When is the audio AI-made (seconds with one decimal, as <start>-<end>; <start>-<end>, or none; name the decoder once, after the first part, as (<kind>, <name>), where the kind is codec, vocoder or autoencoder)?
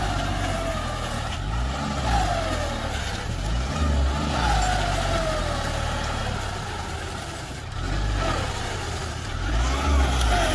none